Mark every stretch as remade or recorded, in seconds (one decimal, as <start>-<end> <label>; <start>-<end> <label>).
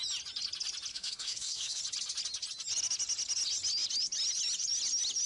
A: 0.0-0.9 recorded; 0.9-1.8 remade; 1.8-5.3 recorded